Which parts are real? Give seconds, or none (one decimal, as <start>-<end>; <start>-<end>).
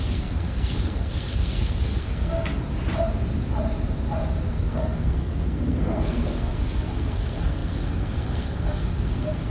2.5-4.5